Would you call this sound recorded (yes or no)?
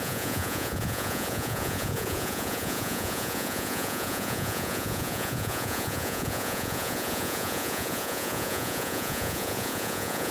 no